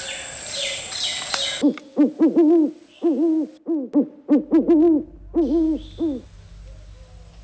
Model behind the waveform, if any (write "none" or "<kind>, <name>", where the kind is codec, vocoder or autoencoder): none